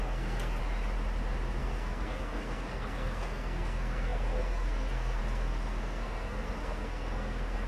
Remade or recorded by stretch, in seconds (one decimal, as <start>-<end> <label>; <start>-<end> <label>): 0.0-0.6 remade; 0.6-1.6 recorded; 1.6-7.7 remade